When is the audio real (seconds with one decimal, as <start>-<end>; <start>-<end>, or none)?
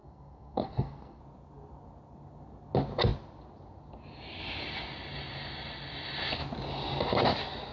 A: 1.2-7.7